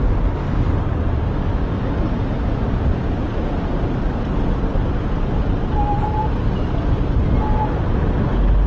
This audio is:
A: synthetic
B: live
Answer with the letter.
B